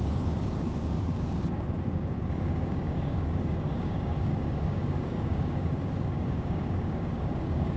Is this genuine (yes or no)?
no